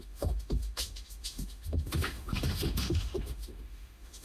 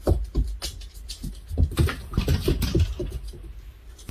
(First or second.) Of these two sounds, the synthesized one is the first